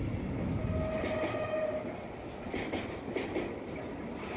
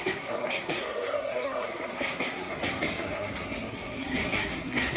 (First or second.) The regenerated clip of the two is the second